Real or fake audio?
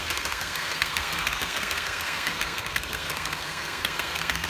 fake